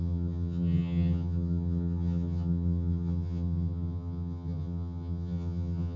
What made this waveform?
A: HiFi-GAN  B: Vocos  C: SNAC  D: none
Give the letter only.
A